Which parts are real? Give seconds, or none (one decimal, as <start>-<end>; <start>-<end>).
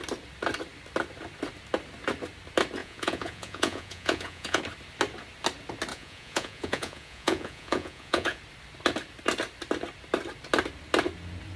0.0-2.8; 4.6-5.9; 8.4-11.6